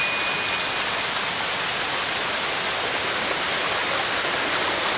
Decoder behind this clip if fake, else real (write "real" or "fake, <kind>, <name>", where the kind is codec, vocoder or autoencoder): real